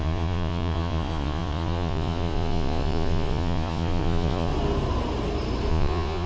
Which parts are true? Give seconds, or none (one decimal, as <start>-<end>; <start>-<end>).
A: 4.5-5.7